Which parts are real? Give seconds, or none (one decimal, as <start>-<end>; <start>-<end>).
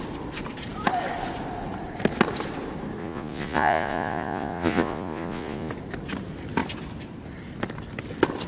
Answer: 0.0-3.0; 5.7-8.5